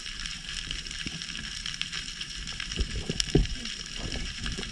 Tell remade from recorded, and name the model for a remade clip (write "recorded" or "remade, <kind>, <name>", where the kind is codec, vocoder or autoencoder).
remade, vocoder, BigVGAN v2